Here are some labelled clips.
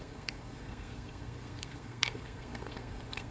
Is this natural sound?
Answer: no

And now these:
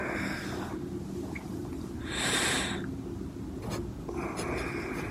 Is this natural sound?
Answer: yes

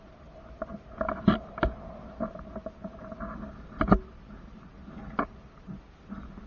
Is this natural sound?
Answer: yes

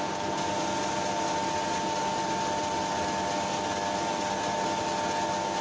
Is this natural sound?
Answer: yes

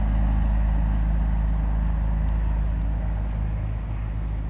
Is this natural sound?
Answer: yes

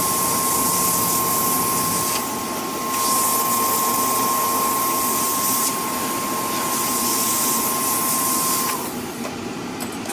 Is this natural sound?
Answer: yes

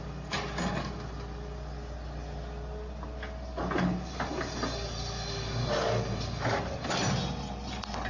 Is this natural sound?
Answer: yes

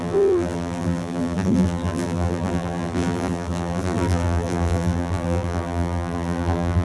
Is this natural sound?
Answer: no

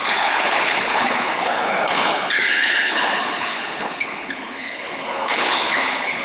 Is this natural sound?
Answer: no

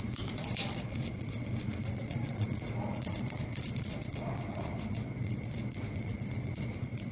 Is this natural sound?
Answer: no